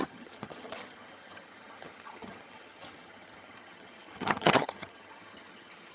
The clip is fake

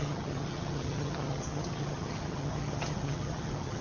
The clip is fake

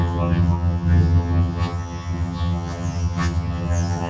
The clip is fake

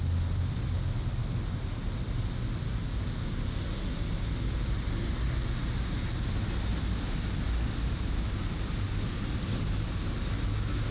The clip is real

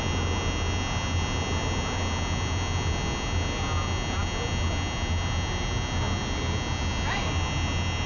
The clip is real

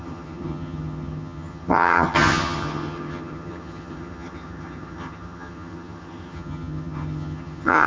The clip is fake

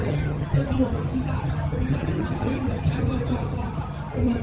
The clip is fake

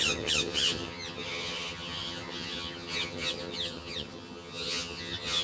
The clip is fake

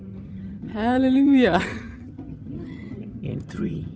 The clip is fake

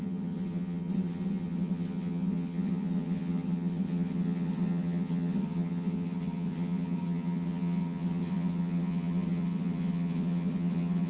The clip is fake